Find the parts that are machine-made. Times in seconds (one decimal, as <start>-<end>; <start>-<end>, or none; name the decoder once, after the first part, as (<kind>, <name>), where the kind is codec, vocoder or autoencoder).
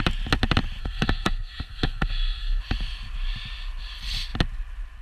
0.8-2.6 (codec, SNAC)